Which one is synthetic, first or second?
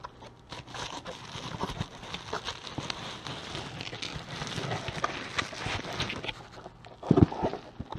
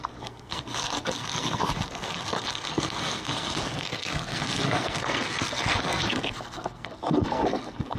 second